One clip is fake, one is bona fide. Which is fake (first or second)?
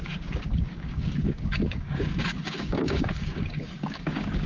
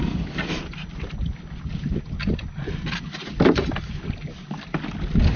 first